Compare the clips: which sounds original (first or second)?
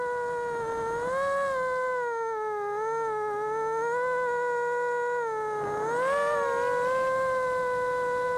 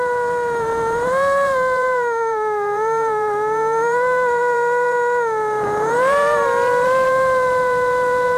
first